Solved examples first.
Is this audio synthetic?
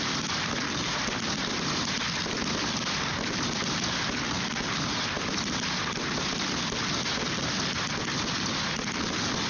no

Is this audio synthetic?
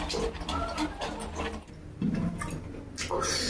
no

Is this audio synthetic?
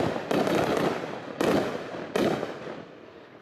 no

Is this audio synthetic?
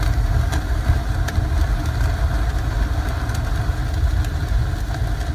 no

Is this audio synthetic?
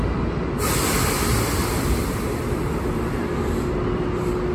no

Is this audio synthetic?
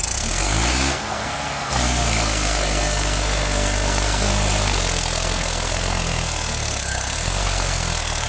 yes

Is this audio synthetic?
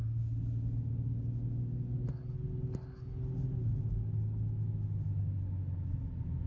no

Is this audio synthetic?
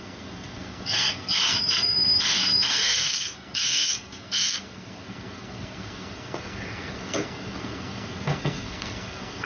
yes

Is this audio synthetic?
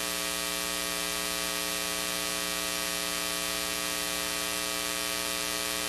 no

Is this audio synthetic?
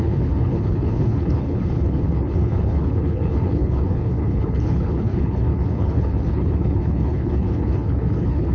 yes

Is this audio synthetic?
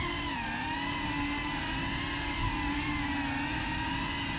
no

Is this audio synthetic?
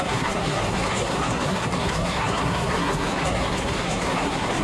yes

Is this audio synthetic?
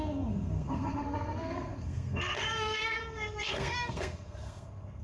yes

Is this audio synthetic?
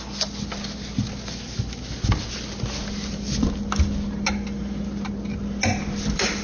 no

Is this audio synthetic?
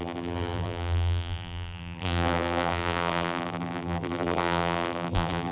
yes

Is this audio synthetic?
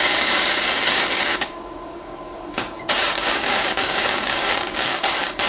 yes